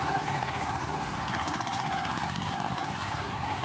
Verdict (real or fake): fake